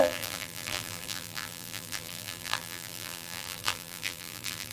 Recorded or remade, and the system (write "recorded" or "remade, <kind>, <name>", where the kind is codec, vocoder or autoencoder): remade, vocoder, BigVGAN v2